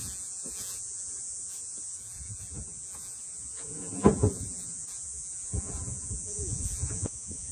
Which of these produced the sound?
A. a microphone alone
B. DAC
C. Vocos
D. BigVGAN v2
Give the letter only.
C